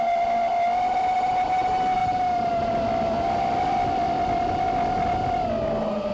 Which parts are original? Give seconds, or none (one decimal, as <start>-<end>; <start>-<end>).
0.0-6.1